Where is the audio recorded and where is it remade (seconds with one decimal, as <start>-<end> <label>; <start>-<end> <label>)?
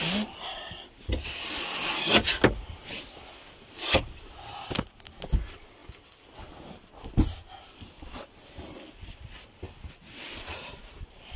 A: 0.0-11.4 recorded